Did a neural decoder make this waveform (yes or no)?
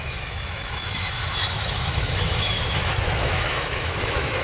yes